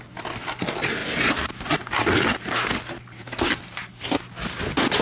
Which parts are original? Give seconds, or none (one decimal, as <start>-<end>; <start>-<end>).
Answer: 0.0-5.0

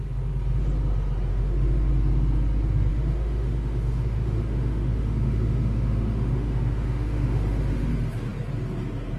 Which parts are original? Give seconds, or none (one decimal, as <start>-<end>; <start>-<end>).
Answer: 0.0-1.3; 1.9-2.9; 7.9-9.2

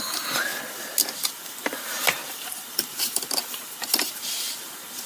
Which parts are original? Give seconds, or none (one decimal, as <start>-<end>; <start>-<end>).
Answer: 0.5-1.3

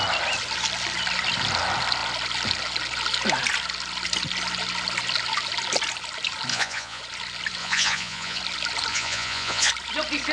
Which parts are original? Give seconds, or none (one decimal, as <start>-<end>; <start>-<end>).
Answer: 0.0-6.5; 7.0-7.6; 8.4-8.9; 9.7-10.3

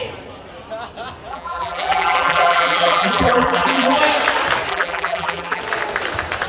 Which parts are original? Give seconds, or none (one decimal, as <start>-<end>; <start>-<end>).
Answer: 0.0-1.3; 4.0-4.7; 5.6-6.5

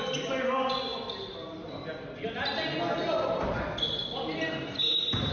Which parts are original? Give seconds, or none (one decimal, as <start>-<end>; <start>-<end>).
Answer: 0.0-5.3

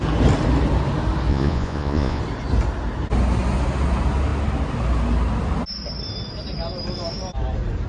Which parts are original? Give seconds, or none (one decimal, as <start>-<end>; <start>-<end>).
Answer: 0.0-1.3; 2.2-7.9